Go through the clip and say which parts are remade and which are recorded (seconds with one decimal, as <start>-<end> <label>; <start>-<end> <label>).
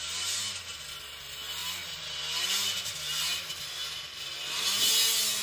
0.0-5.4 recorded